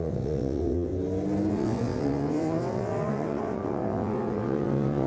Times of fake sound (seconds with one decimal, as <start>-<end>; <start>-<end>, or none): 0.0-0.9; 1.5-5.1